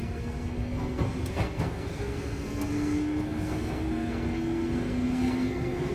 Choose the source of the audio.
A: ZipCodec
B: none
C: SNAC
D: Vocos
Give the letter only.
C